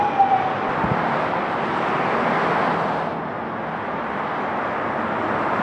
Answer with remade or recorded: recorded